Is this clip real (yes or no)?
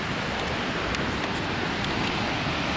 yes